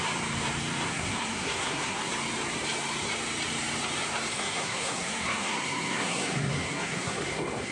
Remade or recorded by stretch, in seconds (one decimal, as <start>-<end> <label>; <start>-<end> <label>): 0.0-0.9 recorded; 0.9-2.1 remade; 2.1-4.3 recorded; 4.3-7.7 remade

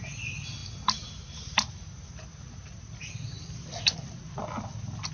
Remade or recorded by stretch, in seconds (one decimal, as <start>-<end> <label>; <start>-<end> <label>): 0.0-5.1 recorded

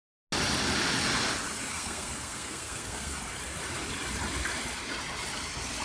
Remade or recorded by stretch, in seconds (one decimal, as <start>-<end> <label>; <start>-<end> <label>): 0.0-1.7 recorded; 1.7-3.2 remade; 3.2-5.8 recorded

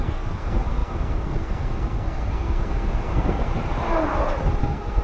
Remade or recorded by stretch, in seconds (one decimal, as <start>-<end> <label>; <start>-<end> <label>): 0.0-3.5 remade; 3.5-4.6 recorded; 4.6-5.0 remade

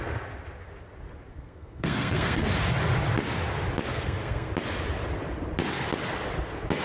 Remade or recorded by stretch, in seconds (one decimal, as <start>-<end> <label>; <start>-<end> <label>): 0.0-1.3 recorded; 1.3-2.5 remade; 2.5-3.9 recorded; 3.9-4.5 remade; 4.5-6.8 recorded

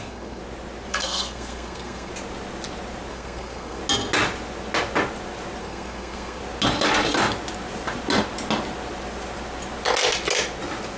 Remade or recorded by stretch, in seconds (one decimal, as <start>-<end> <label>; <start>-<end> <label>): 0.0-0.4 remade; 0.4-0.9 recorded; 0.9-2.1 remade; 2.1-3.1 recorded; 3.1-3.8 remade; 3.8-5.6 recorded; 5.6-6.4 remade; 6.4-11.0 recorded